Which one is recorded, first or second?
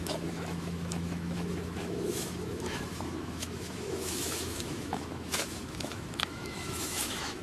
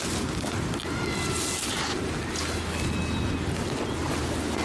second